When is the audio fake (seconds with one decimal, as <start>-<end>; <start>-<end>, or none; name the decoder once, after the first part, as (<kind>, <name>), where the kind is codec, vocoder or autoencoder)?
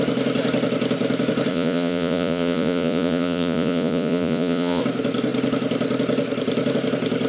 1.5-4.8 (vocoder, Vocos)